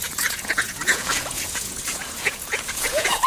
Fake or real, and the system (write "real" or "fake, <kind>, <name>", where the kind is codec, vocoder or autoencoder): fake, vocoder, Vocos